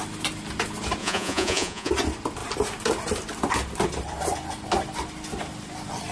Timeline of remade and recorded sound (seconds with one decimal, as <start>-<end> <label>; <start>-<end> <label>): 0.0-1.0 recorded; 1.0-1.9 remade; 1.9-6.1 recorded